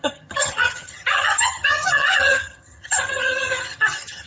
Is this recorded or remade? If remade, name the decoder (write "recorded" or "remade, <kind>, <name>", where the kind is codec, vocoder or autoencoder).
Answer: remade, vocoder, HiFi-GAN